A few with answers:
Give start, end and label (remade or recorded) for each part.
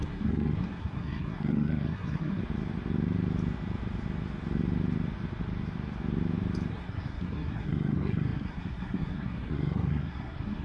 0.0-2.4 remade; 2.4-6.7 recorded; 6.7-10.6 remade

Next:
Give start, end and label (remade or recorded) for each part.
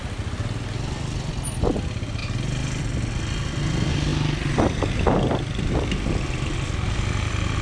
0.0-7.6 recorded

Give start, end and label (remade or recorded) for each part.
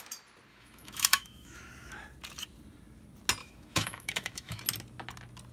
0.0-0.5 recorded; 0.5-1.7 remade; 1.7-3.4 recorded; 3.4-4.6 remade; 4.6-5.5 recorded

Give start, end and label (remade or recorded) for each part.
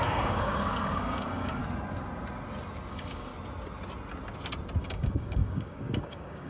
0.0-1.6 remade; 1.6-2.9 recorded; 2.9-3.3 remade; 3.3-4.8 recorded; 4.8-6.5 remade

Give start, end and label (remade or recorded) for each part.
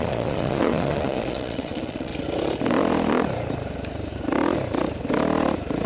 0.0-2.1 remade; 2.1-5.9 recorded